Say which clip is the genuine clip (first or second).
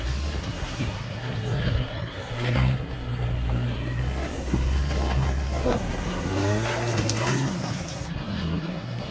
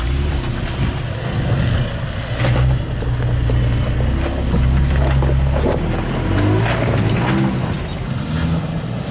second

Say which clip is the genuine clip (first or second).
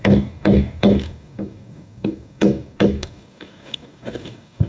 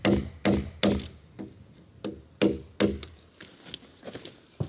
second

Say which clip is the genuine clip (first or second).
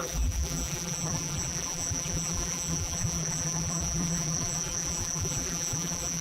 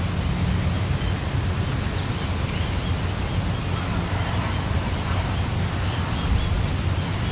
second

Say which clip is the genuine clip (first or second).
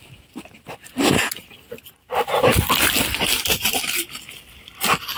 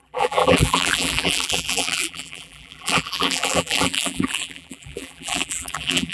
first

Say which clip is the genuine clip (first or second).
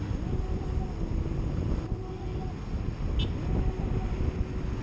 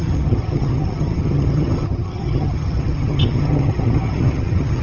first